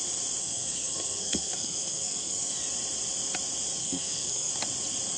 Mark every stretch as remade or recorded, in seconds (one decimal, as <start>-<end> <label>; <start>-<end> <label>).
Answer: 0.0-0.4 recorded; 0.4-2.5 remade; 2.5-3.8 recorded; 3.8-4.5 remade; 4.5-5.2 recorded